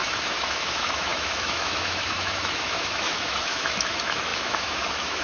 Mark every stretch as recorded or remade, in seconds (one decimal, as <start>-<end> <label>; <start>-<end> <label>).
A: 0.0-5.2 remade